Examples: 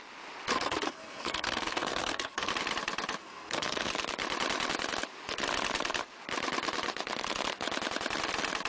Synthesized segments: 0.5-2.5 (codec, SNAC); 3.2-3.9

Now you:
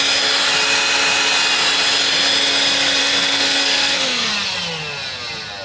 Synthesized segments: 3.0-4.3 (codec, SNAC)